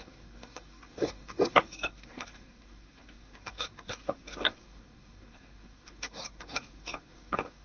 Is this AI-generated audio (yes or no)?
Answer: yes